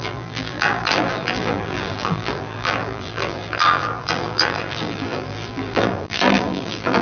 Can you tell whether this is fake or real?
fake